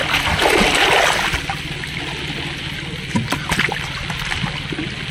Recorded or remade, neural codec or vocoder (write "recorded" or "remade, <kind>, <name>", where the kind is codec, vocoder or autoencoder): recorded